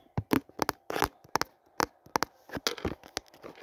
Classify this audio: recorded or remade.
recorded